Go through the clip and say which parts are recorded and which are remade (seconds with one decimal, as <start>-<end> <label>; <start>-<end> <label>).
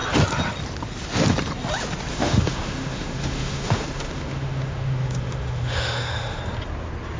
0.0-2.1 recorded; 2.1-6.4 remade; 6.4-7.2 recorded